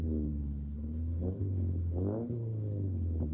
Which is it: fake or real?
fake